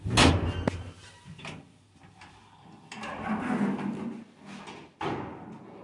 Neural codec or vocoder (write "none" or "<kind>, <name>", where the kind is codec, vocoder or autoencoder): none